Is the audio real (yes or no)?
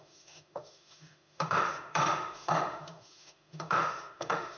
no